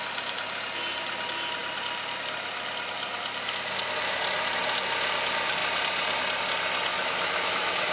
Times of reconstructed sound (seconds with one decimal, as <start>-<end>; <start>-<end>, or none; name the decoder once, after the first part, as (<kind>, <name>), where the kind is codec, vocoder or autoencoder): 6.9-7.9 (autoencoder, DAC-VAE)